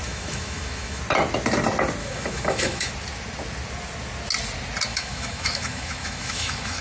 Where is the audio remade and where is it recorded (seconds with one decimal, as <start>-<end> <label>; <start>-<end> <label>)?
0.0-1.0 remade; 1.0-2.0 recorded; 2.0-2.9 remade; 2.9-4.9 recorded; 4.9-6.8 remade